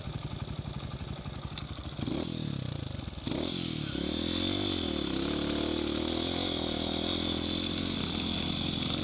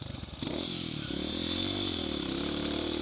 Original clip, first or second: first